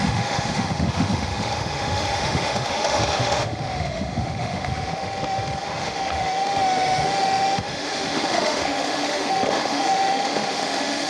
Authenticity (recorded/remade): remade